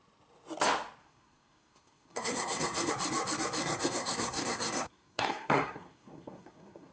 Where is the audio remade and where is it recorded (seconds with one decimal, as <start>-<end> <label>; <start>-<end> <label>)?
0.0-1.0 recorded; 1.0-2.9 remade; 2.9-3.6 recorded; 3.6-6.9 remade